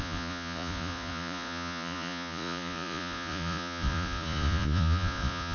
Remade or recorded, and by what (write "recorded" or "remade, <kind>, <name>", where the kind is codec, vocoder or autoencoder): remade, vocoder, Vocos